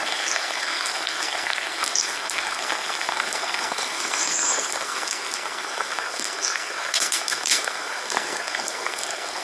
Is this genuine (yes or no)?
no